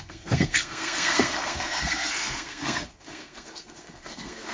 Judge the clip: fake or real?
fake